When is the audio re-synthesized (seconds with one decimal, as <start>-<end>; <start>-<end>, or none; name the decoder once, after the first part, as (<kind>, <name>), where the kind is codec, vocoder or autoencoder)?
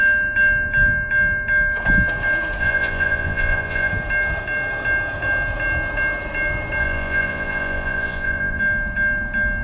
2.6-3.9 (vocoder, Vocos); 6.8-8.6